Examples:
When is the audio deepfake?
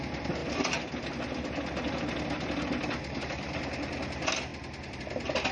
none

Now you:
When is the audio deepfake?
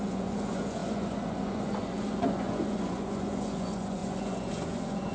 0.0-5.1 (vocoder, Vocos)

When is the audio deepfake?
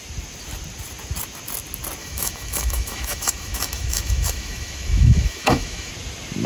2.0-5.9 (autoencoder, DAC-VAE)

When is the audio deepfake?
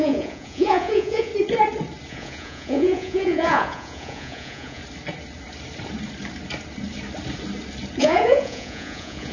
0.0-1.3 (vocoder, Vocos); 2.1-4.8; 8.0-9.3